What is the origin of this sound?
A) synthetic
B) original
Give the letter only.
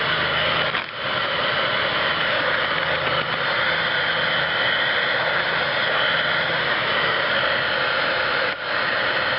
B